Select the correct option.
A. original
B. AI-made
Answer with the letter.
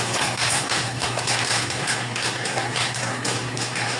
B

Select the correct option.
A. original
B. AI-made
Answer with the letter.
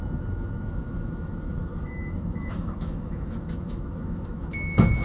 B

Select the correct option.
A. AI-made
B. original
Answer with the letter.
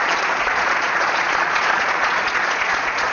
A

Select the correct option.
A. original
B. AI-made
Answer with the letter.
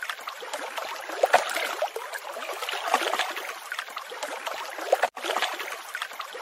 A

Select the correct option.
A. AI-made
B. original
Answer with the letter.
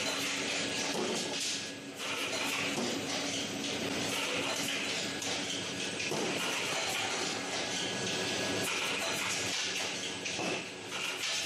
B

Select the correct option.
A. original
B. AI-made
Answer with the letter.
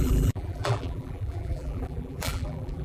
B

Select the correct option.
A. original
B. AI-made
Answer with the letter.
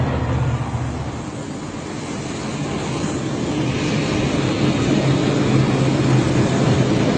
A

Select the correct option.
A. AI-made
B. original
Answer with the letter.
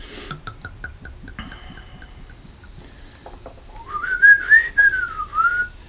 B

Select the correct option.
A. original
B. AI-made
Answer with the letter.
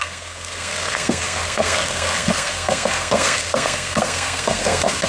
B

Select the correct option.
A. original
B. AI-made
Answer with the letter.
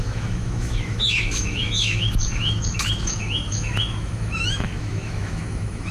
B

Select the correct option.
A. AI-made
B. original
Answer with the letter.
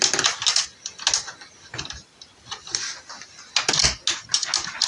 B